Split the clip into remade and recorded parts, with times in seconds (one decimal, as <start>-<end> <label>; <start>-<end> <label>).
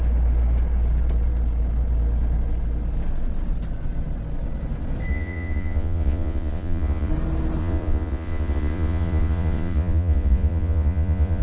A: 0.0-5.1 recorded; 5.1-7.1 remade; 7.1-7.6 recorded; 7.6-11.4 remade